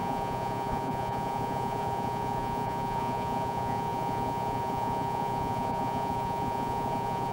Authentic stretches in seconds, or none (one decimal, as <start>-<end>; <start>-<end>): none